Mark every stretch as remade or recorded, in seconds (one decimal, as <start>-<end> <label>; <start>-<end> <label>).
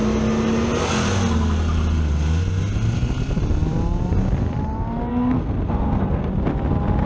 0.0-5.1 recorded; 5.1-6.3 remade; 6.3-7.1 recorded